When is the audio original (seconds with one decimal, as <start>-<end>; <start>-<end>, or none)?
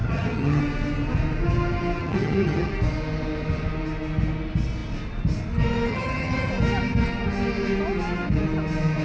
0.6-2.0; 2.7-5.9; 6.5-9.0